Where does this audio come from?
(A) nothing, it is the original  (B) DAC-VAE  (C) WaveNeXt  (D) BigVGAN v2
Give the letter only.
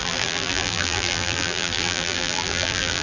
D